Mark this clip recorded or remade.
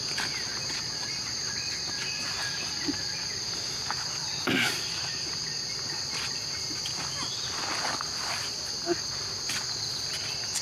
recorded